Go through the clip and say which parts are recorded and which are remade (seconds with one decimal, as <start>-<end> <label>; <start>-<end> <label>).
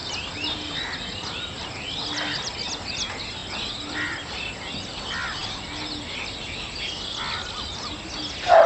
0.0-2.5 remade; 2.5-8.7 recorded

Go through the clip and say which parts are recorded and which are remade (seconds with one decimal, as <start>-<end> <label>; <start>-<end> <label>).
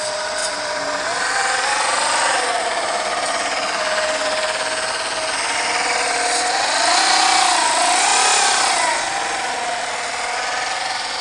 0.0-0.4 recorded; 0.4-2.5 remade; 2.5-11.2 recorded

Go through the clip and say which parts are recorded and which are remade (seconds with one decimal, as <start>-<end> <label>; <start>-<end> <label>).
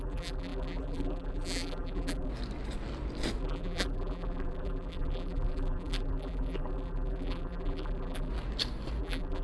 0.0-2.3 remade; 2.3-3.4 recorded; 3.4-8.3 remade; 8.3-9.0 recorded; 9.0-9.4 remade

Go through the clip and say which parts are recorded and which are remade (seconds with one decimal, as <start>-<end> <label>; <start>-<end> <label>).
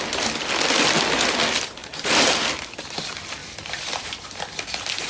0.0-1.8 recorded; 1.8-2.5 remade; 2.5-3.4 recorded; 3.4-4.1 remade; 4.1-5.1 recorded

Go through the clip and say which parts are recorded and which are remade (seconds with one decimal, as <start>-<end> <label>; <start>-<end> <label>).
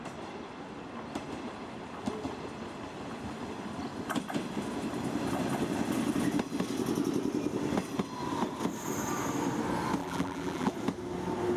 0.0-10.0 recorded; 10.0-10.7 remade; 10.7-11.6 recorded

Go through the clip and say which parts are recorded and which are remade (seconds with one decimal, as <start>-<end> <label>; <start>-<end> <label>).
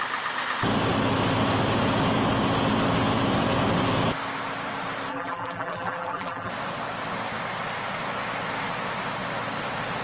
0.0-5.1 recorded; 5.1-6.5 remade; 6.5-10.0 recorded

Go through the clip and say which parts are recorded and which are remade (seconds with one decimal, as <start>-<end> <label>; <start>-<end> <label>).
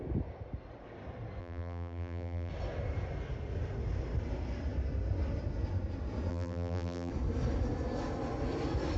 0.0-1.4 recorded; 1.4-2.5 remade; 2.5-6.3 recorded; 6.3-7.1 remade; 7.1-9.0 recorded